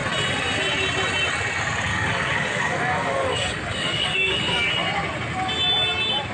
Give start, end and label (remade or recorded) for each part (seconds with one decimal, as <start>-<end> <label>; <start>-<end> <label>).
0.0-1.9 recorded; 1.9-4.7 remade; 4.7-6.3 recorded